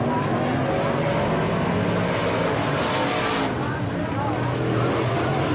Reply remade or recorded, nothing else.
recorded